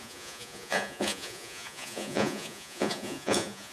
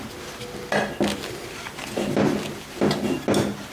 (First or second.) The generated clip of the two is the first